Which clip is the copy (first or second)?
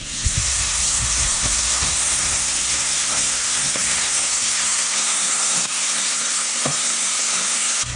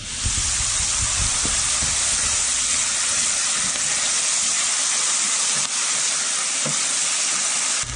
first